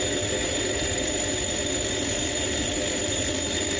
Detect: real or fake real